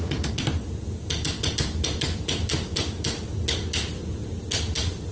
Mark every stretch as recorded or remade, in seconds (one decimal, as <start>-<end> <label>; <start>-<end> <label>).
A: 0.0-5.1 recorded